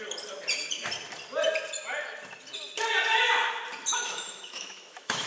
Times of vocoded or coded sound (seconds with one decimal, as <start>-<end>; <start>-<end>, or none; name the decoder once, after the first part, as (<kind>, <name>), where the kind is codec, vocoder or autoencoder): 3.9-5.3 (autoencoder, DAC-VAE)